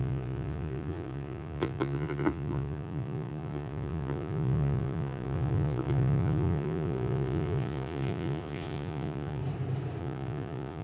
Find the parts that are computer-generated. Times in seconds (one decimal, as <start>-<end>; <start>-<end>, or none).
0.0-9.4; 10.0-10.8